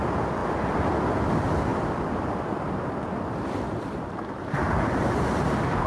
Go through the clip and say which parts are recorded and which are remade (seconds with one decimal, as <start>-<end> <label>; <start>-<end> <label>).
0.0-1.7 recorded; 1.7-4.5 remade; 4.5-5.9 recorded